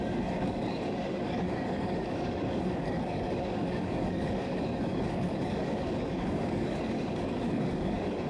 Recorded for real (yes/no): no